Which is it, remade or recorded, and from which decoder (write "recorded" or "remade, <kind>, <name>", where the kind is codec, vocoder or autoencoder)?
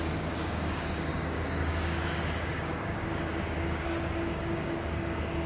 remade, codec, DAC